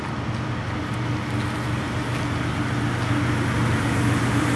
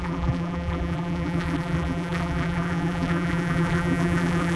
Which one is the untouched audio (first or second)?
first